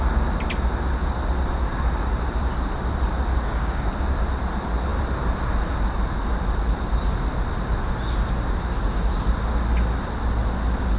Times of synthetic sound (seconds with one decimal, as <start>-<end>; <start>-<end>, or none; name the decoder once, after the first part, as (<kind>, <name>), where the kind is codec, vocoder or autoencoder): 3.3-3.9 (codec, DAC)